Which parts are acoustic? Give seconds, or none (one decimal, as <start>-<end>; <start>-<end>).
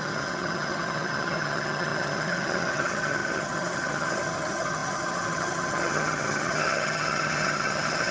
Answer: none